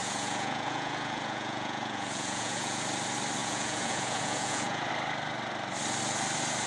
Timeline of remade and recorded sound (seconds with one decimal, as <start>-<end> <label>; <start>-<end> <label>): 0.0-2.8 remade; 2.8-3.4 recorded; 3.4-4.9 remade; 4.9-6.7 recorded